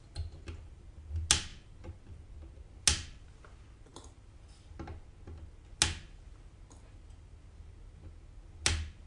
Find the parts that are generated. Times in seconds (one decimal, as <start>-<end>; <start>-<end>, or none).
none